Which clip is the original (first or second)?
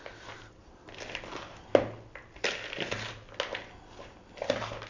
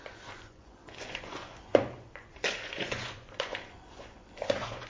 first